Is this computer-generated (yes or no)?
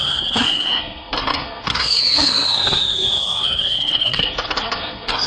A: yes